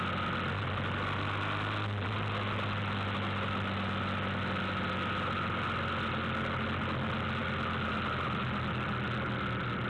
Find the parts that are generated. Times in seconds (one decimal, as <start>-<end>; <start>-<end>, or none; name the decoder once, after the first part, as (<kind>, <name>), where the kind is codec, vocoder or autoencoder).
none